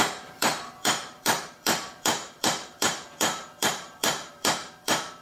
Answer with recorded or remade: remade